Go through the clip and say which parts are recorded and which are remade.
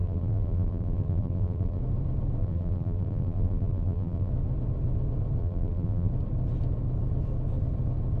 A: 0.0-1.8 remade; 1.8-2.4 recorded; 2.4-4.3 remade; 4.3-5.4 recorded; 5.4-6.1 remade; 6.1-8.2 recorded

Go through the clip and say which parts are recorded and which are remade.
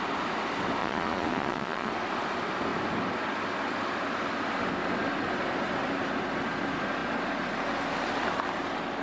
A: 0.0-0.8 recorded; 0.8-1.9 remade; 1.9-9.0 recorded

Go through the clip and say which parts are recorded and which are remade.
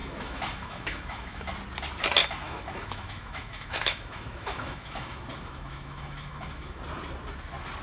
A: 0.0-1.5 remade; 1.5-2.2 recorded; 2.2-6.8 remade; 6.8-7.8 recorded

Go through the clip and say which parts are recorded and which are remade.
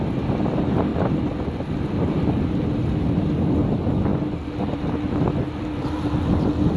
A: 0.0-6.8 recorded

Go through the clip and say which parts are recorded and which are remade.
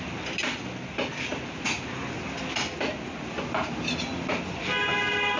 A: 0.0-5.4 recorded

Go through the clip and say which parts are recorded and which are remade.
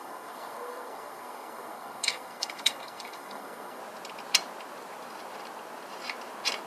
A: 0.0-3.8 remade; 3.8-6.7 recorded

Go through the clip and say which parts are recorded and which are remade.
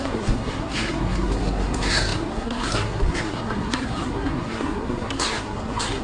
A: 0.0-6.0 remade